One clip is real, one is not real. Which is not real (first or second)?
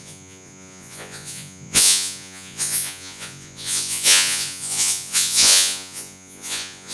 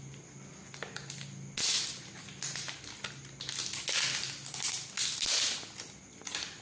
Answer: first